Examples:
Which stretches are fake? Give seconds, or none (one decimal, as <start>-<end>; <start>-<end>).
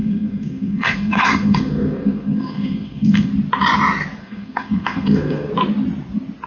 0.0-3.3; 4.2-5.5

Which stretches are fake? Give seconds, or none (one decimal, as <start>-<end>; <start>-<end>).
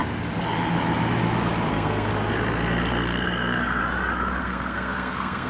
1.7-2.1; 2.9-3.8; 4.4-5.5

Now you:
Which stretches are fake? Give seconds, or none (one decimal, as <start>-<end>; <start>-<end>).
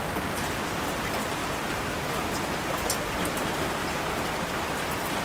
1.4-3.0; 3.8-4.3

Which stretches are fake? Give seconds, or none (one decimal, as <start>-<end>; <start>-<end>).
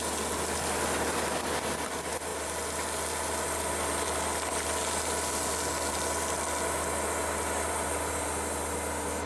none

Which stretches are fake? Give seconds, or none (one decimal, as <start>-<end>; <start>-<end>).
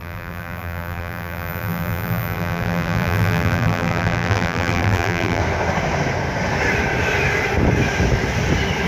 0.0-5.4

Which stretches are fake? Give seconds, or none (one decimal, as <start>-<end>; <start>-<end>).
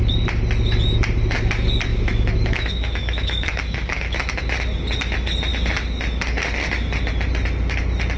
1.9-4.4